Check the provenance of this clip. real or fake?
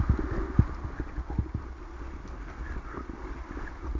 real